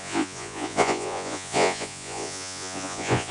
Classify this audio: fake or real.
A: fake